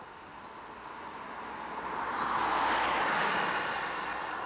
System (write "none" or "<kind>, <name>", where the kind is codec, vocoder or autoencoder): none